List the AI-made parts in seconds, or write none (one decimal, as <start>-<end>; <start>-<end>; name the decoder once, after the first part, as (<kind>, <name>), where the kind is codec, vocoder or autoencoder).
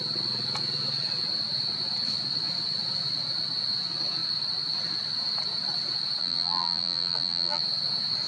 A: 6.2-7.6 (vocoder, BigVGAN v2)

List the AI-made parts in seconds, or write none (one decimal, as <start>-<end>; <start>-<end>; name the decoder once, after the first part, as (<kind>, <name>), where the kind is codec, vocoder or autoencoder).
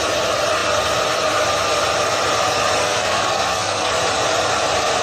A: 2.8-3.9 (codec, SNAC)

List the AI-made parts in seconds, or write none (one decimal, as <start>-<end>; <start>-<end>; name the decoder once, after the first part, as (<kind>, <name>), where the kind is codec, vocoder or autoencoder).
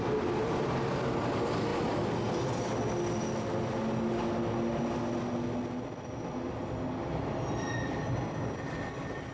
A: none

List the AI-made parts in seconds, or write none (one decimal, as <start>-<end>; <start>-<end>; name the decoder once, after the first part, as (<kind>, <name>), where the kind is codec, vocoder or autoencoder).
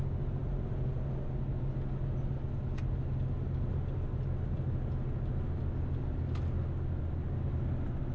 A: none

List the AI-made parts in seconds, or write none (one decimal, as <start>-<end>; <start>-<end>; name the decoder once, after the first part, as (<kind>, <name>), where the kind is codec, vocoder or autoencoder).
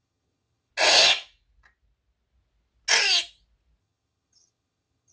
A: 0.0-0.7 (vocoder, HiFi-GAN); 3.8-5.1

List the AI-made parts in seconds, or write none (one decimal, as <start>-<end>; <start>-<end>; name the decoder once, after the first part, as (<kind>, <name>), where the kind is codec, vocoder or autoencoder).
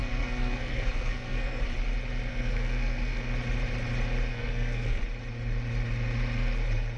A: 0.0-1.6 (codec, SNAC); 2.3-3.2; 4.3-5.0